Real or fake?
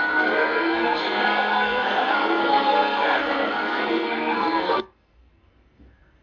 fake